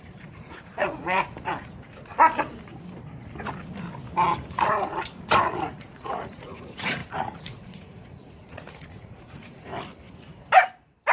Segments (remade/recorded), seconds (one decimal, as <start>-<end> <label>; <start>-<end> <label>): 0.0-1.5 remade; 1.5-5.5 recorded; 5.5-9.7 remade; 9.7-11.1 recorded